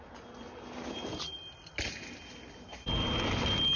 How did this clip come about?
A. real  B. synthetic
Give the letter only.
A